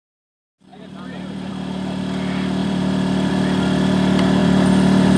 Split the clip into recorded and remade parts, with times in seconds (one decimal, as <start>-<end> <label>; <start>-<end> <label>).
0.0-0.7 recorded; 0.7-1.5 remade; 1.5-2.6 recorded; 2.6-3.3 remade; 3.3-4.4 recorded; 4.4-5.2 remade